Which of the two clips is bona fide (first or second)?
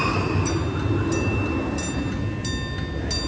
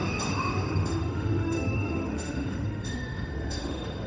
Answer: first